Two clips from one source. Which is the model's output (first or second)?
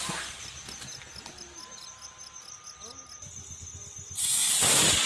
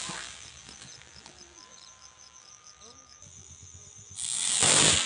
second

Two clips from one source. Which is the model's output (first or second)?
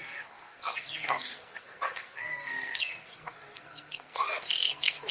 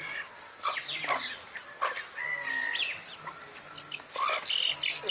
first